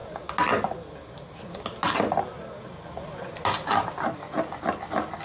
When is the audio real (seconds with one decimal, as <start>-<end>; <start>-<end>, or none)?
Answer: 0.0-5.2